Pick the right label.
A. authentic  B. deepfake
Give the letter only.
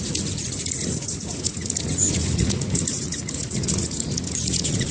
B